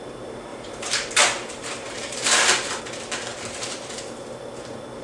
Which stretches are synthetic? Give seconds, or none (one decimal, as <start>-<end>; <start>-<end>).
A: 0.5-2.8; 3.3-4.0